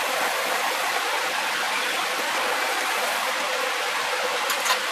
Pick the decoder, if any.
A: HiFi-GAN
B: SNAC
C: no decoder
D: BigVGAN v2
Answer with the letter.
C